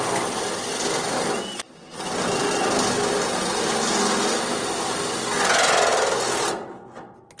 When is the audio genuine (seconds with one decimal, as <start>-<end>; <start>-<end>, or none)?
0.0-7.4